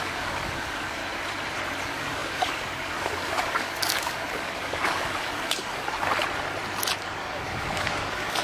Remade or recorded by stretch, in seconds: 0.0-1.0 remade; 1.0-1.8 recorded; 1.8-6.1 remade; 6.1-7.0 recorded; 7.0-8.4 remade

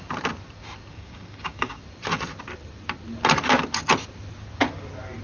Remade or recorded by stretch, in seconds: 0.0-0.9 recorded; 0.9-1.8 remade; 1.8-5.2 recorded

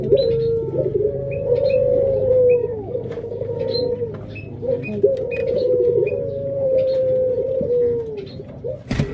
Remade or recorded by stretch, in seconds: 0.0-2.6 recorded; 2.6-3.6 remade; 3.6-5.4 recorded; 5.4-6.1 remade; 6.1-9.1 recorded

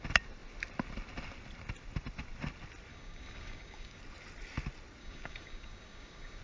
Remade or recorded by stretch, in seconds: 0.0-2.9 recorded; 2.9-4.0 remade; 4.0-5.0 recorded; 5.0-6.4 remade

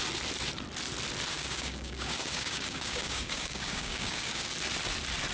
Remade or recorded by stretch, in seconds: 0.0-1.3 recorded; 1.3-4.5 remade; 4.5-5.3 recorded

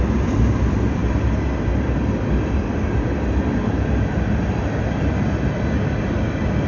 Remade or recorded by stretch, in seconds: 0.0-6.7 recorded